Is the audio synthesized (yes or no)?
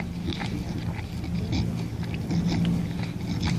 no